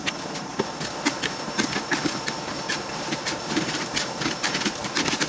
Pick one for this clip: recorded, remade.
recorded